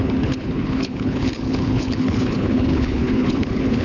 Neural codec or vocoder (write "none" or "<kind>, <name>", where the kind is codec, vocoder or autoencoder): codec, HILCodec